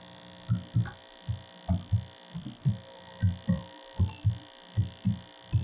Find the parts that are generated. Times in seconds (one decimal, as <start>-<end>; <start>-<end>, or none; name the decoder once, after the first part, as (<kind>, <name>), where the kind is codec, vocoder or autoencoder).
none